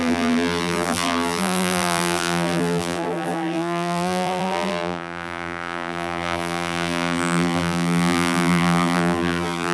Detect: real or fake fake